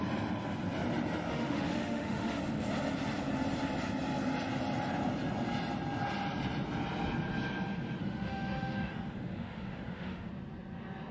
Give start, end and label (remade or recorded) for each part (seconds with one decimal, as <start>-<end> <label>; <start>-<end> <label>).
0.0-1.3 recorded; 1.3-2.4 remade; 2.4-8.0 recorded; 8.0-10.3 remade; 10.3-11.1 recorded